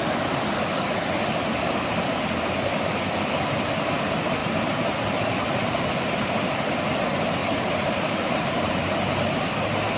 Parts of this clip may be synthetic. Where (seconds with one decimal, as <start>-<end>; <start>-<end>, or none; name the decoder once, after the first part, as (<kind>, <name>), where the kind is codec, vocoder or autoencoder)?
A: 4.4-6.3 (vocoder, BigVGAN v2); 7.4-8.8